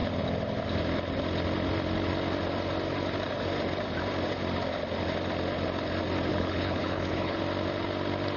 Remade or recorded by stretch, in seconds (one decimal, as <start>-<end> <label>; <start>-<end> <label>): 0.0-6.3 recorded; 6.3-7.4 remade; 7.4-8.4 recorded